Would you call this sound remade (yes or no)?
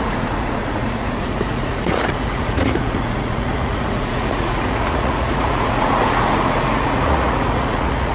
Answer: yes